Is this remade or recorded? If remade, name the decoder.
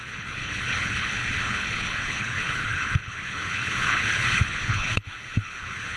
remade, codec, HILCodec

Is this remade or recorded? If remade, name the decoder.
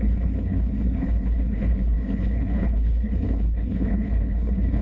remade, codec, HILCodec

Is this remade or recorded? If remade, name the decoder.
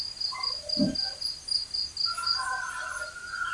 recorded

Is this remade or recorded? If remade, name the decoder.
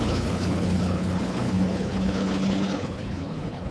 remade, codec, HILCodec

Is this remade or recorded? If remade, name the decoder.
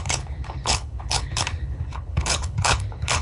remade, codec, HILCodec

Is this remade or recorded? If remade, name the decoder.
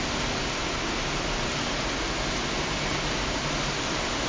recorded